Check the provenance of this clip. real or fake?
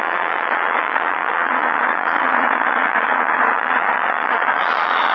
fake